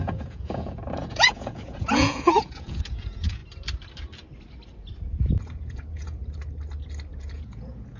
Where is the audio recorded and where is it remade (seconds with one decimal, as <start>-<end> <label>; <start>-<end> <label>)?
0.0-3.4 remade; 3.4-5.4 recorded; 5.4-6.2 remade; 6.2-7.1 recorded; 7.1-8.0 remade